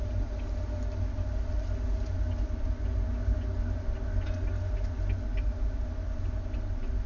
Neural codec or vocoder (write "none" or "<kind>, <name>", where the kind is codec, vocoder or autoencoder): none